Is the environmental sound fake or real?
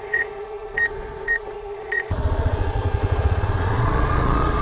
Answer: fake